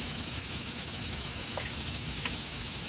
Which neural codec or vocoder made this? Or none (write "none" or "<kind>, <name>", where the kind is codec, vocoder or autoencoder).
autoencoder, DAC-VAE